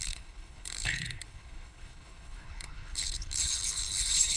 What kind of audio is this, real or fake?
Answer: fake